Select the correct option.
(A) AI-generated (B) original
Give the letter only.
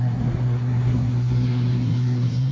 A